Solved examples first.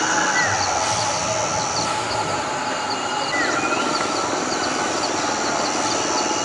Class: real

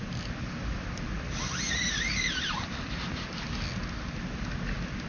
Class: real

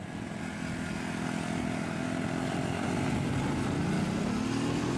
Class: real